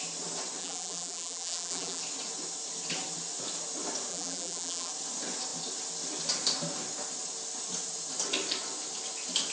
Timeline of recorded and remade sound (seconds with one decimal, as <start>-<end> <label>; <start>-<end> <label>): 0.0-0.6 recorded; 0.6-2.0 remade; 2.0-4.1 recorded; 4.1-4.9 remade; 4.9-9.5 recorded